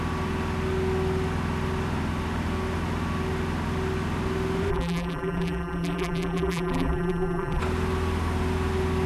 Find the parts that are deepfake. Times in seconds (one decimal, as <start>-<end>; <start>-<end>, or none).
4.7-7.6